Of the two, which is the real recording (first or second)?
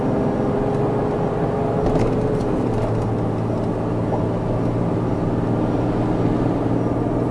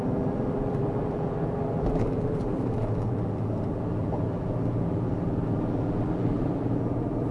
first